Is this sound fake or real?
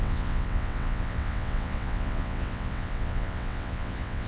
fake